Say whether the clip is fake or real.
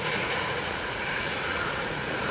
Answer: fake